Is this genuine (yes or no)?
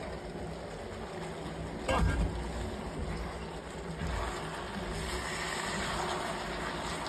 yes